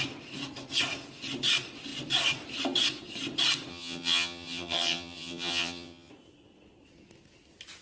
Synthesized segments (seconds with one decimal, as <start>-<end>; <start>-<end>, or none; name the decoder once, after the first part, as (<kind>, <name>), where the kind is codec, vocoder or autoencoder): 3.7-6.1 (vocoder, HiFi-GAN)